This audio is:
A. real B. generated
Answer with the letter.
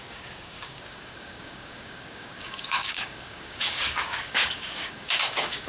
B